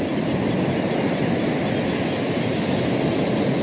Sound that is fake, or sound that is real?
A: real